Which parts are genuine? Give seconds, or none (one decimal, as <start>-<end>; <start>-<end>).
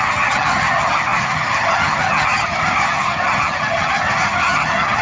none